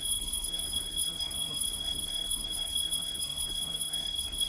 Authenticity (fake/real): fake